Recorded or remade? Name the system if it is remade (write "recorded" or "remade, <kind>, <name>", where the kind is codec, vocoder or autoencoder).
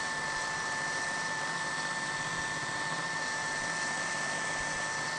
recorded